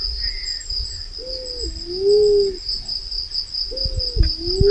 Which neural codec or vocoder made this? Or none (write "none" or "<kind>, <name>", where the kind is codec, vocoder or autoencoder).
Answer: none